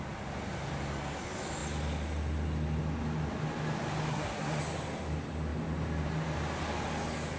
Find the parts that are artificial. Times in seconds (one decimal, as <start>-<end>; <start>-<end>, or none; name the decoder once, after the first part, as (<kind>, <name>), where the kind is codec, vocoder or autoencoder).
4.1-4.6 (codec, SNAC)